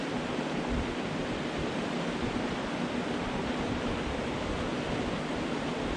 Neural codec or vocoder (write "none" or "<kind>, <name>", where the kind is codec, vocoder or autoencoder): vocoder, BigVGAN v2